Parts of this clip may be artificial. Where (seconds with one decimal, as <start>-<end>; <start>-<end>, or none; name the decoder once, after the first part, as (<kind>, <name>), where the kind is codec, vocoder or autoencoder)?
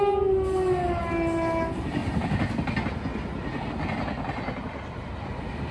none